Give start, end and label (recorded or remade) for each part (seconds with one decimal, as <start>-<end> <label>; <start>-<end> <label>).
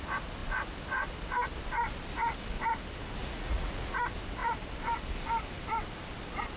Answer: 0.0-3.2 recorded; 3.2-4.0 remade; 4.0-6.6 recorded